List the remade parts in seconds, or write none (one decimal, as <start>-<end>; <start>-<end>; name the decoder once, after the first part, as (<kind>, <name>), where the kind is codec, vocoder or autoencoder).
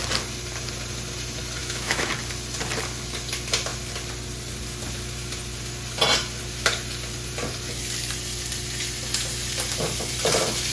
1.6-2.1 (autoencoder, DAC-VAE)